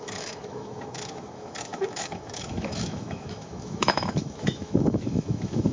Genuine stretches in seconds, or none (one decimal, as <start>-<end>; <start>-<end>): none